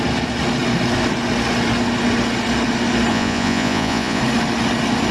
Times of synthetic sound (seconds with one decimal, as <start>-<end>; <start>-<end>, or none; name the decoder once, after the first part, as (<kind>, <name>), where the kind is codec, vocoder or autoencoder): 3.1-4.2 (vocoder, Vocos)